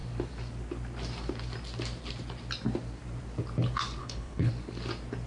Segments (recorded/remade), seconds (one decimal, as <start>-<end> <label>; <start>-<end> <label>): 0.0-4.0 recorded; 4.0-4.5 remade; 4.5-5.3 recorded